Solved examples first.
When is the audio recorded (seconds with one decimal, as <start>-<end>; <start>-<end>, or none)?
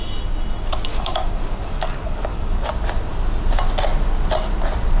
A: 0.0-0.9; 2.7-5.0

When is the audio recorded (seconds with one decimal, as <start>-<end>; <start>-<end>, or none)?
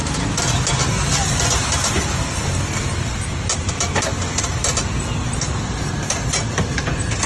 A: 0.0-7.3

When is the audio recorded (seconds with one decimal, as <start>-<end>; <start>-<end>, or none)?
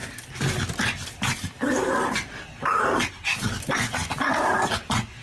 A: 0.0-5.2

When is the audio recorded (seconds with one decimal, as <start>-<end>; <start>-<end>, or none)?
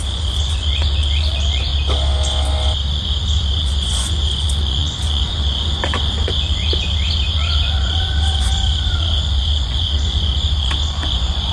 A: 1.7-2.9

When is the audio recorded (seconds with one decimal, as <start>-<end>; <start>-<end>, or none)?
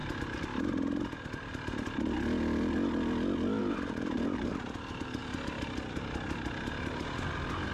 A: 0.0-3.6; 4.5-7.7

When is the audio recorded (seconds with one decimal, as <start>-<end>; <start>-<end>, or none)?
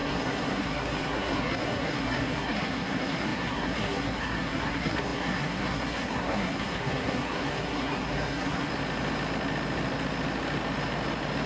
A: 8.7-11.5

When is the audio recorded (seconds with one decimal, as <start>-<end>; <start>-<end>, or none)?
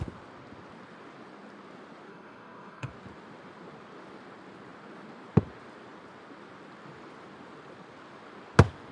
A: 0.0-2.1; 2.9-8.9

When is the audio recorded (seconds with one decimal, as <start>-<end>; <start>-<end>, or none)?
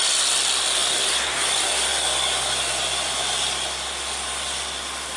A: 0.0-5.2